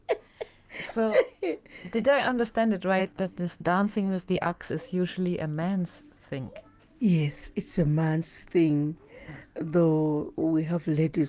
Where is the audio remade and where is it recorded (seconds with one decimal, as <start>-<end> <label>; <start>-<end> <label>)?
0.0-1.8 recorded; 1.8-2.5 remade; 2.5-3.0 recorded; 3.0-4.7 remade; 4.7-11.3 recorded